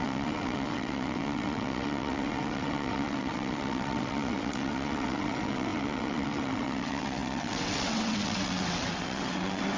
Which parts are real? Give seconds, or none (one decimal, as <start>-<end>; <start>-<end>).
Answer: none